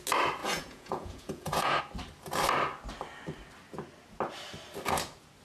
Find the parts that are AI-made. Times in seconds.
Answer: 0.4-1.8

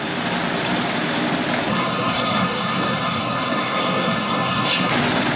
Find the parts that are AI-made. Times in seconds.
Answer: 1.7-4.9

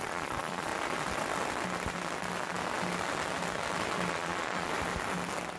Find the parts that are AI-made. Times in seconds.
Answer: 0.0-0.7; 4.1-4.7

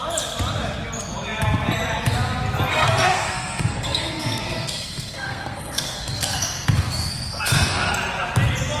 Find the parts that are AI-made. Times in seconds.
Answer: 2.7-7.9

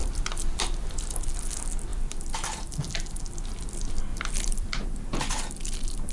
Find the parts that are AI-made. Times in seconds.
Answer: 0.0-0.9; 1.9-3.2; 4.1-5.0